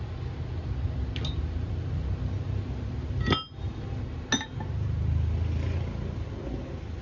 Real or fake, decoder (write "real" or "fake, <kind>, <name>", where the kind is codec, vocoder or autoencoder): real